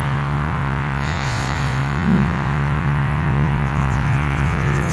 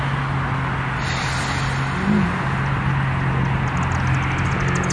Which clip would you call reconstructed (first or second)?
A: first